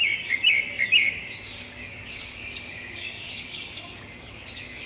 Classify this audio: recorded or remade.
remade